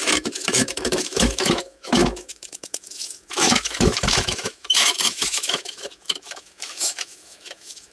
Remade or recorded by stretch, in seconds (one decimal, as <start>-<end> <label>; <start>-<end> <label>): 0.0-7.9 remade